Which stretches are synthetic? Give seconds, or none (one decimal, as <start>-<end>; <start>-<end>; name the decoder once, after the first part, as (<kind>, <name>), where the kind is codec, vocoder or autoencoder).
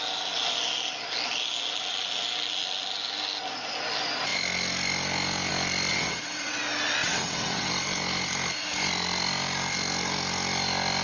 5.9-6.6 (vocoder, WaveNeXt); 7.0-7.7